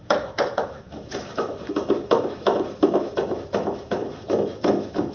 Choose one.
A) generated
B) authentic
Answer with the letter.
A